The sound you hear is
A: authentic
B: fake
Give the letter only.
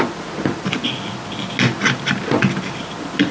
A